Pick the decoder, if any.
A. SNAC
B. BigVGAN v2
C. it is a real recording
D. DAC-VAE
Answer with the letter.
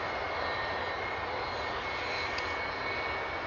C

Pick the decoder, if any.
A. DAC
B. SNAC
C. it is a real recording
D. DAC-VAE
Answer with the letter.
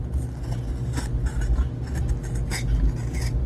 C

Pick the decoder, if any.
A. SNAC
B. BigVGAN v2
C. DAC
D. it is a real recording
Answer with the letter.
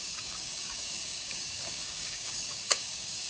C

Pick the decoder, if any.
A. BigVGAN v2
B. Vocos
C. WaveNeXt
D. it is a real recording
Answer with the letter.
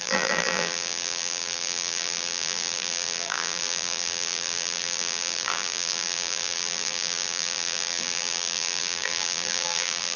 A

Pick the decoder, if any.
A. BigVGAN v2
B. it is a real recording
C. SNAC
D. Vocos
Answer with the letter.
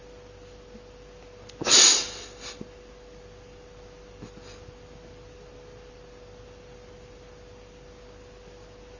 B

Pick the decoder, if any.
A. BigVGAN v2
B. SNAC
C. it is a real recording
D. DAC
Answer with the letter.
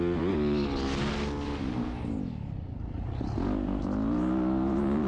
C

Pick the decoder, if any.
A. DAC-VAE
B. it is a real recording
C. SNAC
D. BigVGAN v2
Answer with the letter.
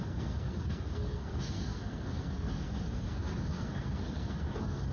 C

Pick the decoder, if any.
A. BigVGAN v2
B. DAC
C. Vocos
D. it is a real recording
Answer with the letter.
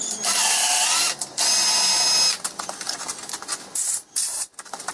D